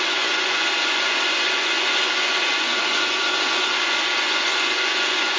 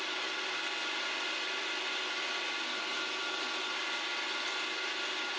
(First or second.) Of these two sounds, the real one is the second